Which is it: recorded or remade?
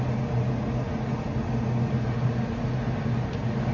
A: recorded